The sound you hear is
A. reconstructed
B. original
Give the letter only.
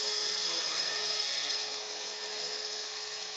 A